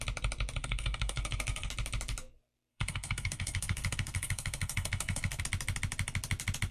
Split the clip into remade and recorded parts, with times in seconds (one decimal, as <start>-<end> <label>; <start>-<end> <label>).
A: 0.0-0.6 recorded; 0.6-1.7 remade; 1.7-2.7 recorded; 2.7-5.4 remade; 5.4-6.7 recorded

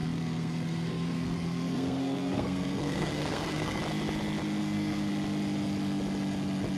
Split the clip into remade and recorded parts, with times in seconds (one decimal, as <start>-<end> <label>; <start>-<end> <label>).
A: 0.0-3.8 remade; 3.8-4.6 recorded; 4.6-5.1 remade; 5.1-6.8 recorded